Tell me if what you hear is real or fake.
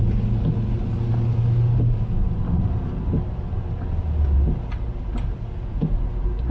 real